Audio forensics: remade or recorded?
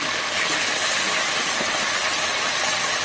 recorded